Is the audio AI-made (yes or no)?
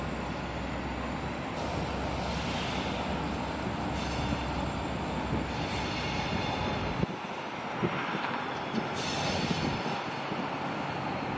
no